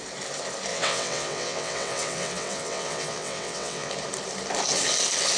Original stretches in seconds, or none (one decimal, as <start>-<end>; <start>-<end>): 0.0-0.7; 3.9-5.4